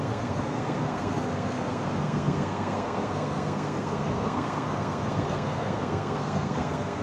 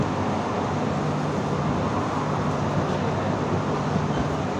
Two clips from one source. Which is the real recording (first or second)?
second